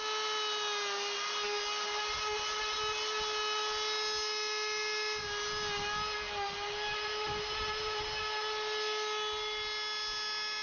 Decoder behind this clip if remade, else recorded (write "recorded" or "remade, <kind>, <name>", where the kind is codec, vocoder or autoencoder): recorded